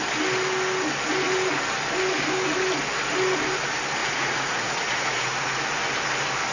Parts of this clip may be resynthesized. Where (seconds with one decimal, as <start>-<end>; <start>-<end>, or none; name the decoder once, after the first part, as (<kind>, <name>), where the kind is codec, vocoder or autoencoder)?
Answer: 4.0-5.6 (vocoder, Vocos)